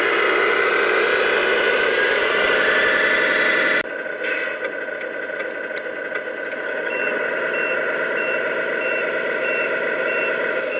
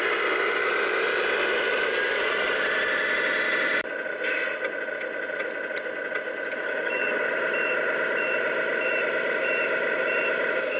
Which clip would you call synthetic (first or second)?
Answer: second